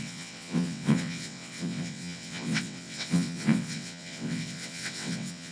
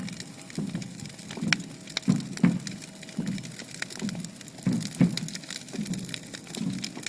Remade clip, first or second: first